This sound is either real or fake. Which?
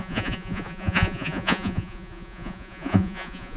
fake